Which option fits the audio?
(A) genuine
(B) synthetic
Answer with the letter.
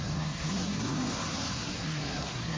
B